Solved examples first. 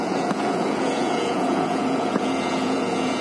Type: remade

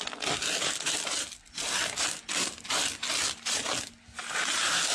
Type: recorded